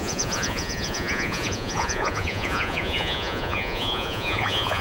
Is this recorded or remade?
remade